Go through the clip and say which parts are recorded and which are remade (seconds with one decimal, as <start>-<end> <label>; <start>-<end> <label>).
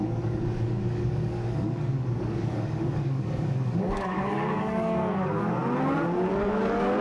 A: 0.0-5.6 remade; 5.6-6.3 recorded; 6.3-7.0 remade